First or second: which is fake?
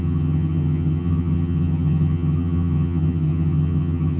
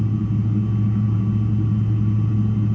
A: first